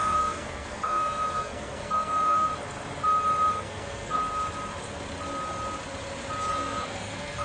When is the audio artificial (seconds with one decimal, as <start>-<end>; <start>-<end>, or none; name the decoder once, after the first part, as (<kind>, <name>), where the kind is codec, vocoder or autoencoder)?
0.0-2.5 (codec, SNAC); 3.5-4.2; 6.5-7.4